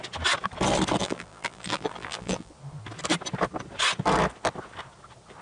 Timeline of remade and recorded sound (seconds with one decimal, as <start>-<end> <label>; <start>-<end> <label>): 0.0-1.0 recorded; 1.0-2.5 remade; 2.5-5.4 recorded